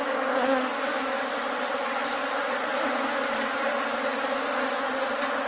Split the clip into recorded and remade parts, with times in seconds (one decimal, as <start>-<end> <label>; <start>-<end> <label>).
0.0-5.5 recorded